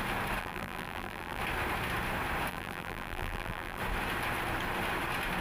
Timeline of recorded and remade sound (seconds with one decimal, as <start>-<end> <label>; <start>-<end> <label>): 0.0-0.4 recorded; 0.4-1.4 remade; 1.4-2.5 recorded; 2.5-3.8 remade; 3.8-5.4 recorded